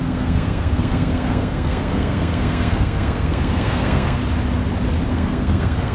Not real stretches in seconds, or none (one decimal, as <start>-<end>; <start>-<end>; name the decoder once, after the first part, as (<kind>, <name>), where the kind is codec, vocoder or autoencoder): 0.0-4.2 (codec, SNAC); 5.1-5.9